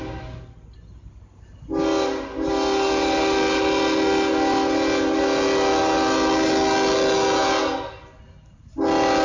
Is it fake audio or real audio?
real